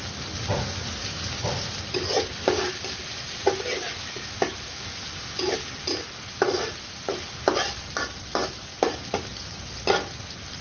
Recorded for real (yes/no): yes